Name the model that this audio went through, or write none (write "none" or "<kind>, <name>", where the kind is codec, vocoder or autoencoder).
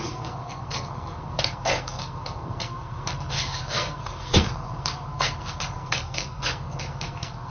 codec, SNAC